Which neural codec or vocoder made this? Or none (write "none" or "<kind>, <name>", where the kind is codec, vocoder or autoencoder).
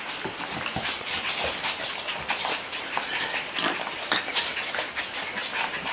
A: none